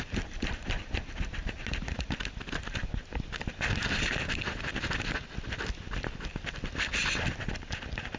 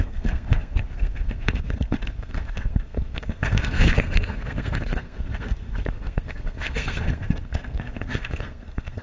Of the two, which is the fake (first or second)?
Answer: second